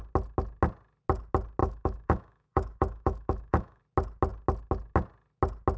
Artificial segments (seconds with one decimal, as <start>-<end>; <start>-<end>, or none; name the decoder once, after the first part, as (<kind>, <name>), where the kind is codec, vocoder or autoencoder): 1.6-3.8 (autoencoder, DAC-VAE)

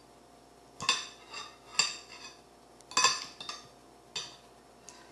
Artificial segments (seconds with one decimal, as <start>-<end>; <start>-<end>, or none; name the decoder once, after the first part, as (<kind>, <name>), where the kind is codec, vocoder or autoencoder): none

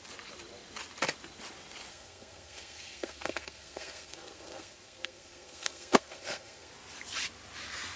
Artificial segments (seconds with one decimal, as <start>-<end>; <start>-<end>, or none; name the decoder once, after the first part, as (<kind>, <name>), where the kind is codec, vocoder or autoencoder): 1.9-6.7 (codec, SNAC)